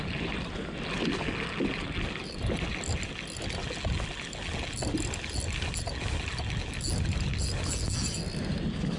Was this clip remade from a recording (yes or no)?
no